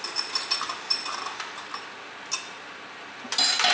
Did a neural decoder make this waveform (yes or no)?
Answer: no